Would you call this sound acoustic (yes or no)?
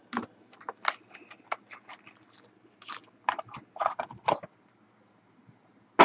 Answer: yes